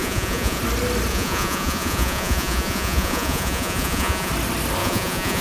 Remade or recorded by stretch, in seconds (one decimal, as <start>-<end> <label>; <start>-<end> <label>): 0.0-0.6 remade; 0.6-1.1 recorded; 1.1-4.3 remade; 4.3-4.8 recorded; 4.8-5.4 remade